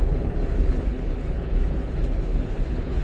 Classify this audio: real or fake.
fake